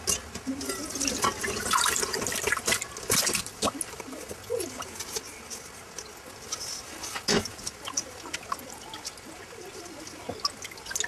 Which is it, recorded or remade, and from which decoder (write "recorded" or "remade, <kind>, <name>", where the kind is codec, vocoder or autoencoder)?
recorded